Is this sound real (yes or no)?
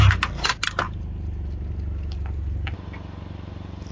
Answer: yes